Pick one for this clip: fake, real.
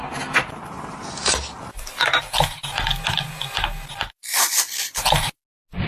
real